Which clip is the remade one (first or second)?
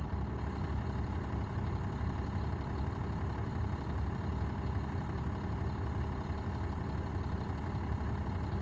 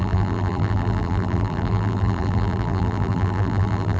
second